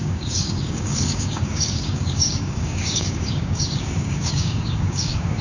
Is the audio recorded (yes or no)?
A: no